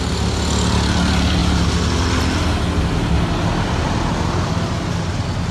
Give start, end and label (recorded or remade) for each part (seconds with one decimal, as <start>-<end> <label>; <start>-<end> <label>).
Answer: 0.0-5.5 recorded